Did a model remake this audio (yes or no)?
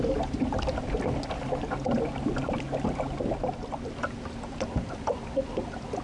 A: no